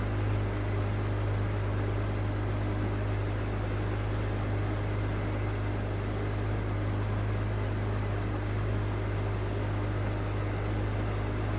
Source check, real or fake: real